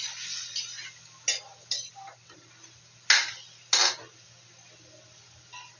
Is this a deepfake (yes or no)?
no